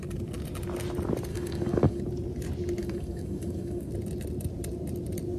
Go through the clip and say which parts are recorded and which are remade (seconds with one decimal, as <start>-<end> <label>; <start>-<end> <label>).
0.0-1.3 recorded; 1.3-2.0 remade; 2.0-2.8 recorded; 2.8-3.9 remade; 3.9-5.4 recorded